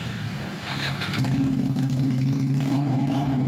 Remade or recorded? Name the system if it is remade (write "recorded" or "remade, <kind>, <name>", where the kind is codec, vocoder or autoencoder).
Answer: remade, codec, DAC